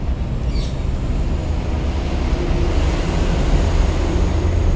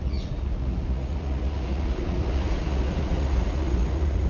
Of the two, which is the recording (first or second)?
first